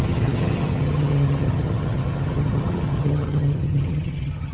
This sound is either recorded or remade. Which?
remade